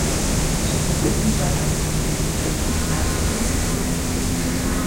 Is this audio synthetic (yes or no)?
no